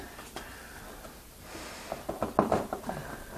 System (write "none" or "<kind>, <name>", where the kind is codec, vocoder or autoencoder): none